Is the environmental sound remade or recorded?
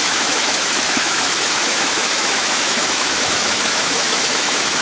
remade